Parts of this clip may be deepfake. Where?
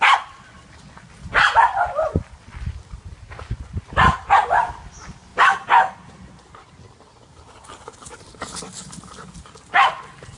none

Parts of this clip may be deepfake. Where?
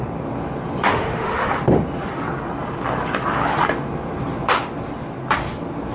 0.9-1.5 (autoencoder, DAC-VAE)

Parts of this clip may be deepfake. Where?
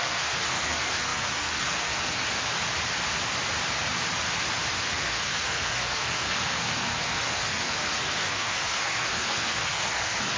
0.0-2.2 (codec, SNAC); 4.8-10.4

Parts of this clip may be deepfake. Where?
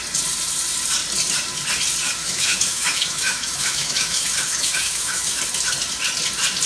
2.2-5.4 (autoencoder, DAC-VAE)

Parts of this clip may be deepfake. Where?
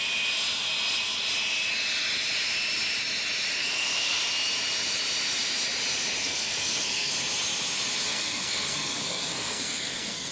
3.6-4.2 (codec, SNAC); 6.2-7.1; 8.1-10.3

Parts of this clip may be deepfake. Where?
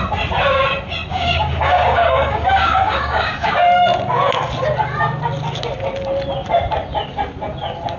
1.1-3.5 (codec, DAC)